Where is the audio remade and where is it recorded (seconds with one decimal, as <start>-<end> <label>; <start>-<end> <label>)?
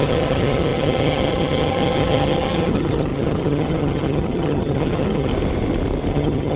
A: 0.0-5.3 remade; 5.3-6.1 recorded; 6.1-6.6 remade